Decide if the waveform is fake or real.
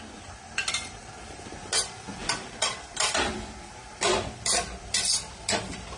fake